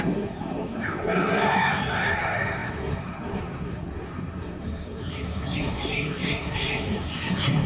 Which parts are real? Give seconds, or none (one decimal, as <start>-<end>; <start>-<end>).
none